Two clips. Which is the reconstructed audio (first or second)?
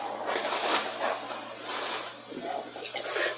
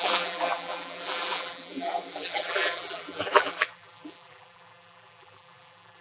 second